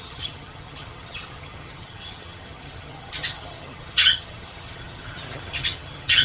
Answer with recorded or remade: remade